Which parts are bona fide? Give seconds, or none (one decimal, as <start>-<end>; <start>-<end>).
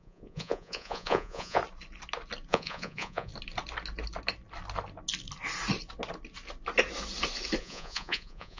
1.6-2.5; 3.3-7.6